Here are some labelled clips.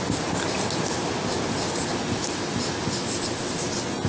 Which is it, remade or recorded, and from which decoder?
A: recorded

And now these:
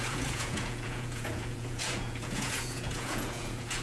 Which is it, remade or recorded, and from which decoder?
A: remade, vocoder, Vocos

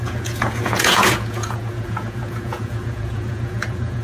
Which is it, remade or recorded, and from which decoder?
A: remade, vocoder, Vocos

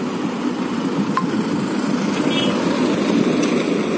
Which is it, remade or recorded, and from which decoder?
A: recorded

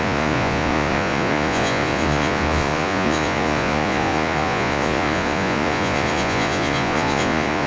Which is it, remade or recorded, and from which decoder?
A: remade, vocoder, Vocos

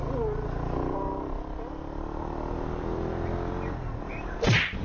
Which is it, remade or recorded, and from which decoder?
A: recorded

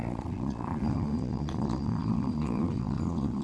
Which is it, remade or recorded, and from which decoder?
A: remade, vocoder, Vocos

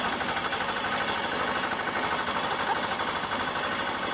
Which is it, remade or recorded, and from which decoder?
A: recorded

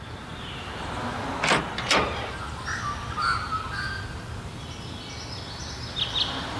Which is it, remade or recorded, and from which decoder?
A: recorded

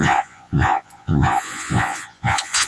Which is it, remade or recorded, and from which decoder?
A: remade, vocoder, Vocos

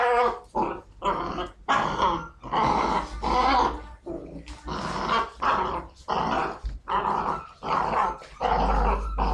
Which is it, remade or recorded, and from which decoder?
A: recorded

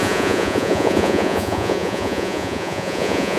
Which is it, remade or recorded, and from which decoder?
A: remade, vocoder, Vocos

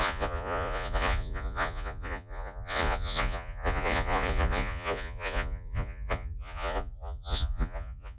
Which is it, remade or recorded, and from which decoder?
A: remade, vocoder, Vocos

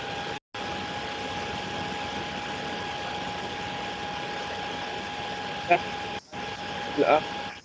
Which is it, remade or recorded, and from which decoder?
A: recorded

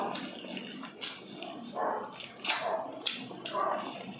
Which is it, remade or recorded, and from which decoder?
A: recorded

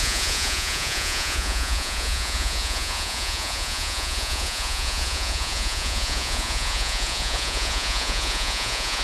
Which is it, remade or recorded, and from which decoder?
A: remade, vocoder, Vocos